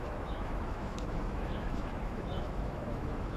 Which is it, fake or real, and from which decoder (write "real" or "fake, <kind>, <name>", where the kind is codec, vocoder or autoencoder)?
fake, autoencoder, DAC-VAE